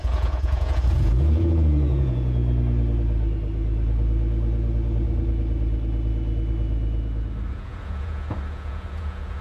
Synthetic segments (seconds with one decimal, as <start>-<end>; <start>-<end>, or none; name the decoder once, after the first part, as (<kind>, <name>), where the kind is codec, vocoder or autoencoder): 0.0-2.4 (vocoder, Vocos); 7.5-9.4